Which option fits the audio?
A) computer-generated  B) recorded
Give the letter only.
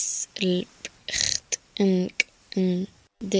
B